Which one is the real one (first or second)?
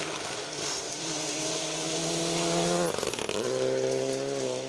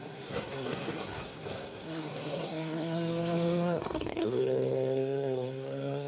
first